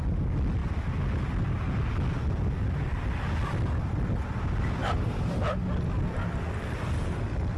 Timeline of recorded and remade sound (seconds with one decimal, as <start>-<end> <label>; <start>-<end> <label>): 0.0-4.8 recorded; 4.8-5.4 remade; 5.4-7.6 recorded

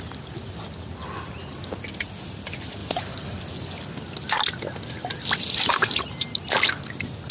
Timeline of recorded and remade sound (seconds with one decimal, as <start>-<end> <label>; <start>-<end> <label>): 0.0-7.3 recorded

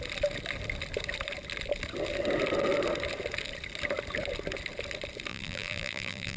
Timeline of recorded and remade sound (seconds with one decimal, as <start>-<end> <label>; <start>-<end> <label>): 0.0-5.3 recorded; 5.3-6.4 remade

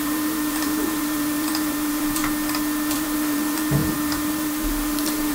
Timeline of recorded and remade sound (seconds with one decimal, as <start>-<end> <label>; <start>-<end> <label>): 0.0-2.2 remade; 2.2-2.9 recorded; 2.9-5.3 remade